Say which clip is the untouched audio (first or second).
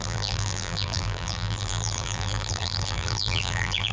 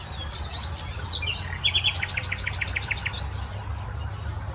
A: second